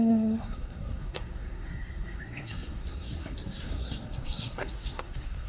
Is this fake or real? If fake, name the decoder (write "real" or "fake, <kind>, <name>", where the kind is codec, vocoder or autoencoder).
fake, codec, SNAC